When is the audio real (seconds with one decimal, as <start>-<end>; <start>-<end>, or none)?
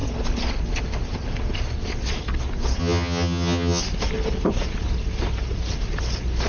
0.0-2.8; 3.8-6.5